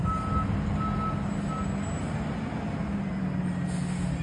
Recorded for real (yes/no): yes